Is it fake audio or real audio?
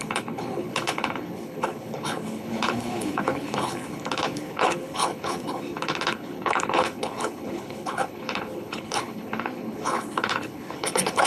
fake